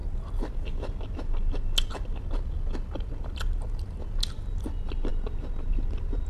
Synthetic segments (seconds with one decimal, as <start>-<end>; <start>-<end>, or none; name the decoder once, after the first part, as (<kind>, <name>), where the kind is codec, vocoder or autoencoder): none